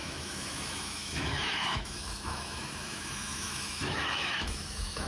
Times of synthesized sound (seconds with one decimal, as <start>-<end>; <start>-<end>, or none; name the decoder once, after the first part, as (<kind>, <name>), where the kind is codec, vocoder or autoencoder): 0.0-5.1 (autoencoder, DAC-VAE)